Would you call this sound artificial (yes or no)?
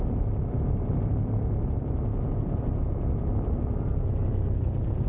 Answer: no